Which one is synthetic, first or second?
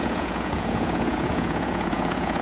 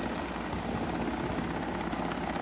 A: first